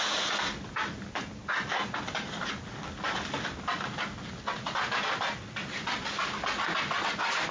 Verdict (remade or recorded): recorded